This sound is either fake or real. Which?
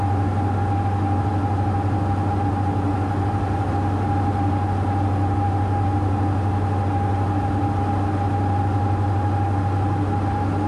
real